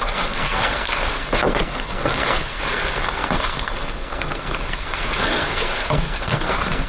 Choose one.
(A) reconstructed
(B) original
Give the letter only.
A